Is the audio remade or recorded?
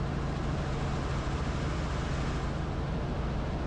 recorded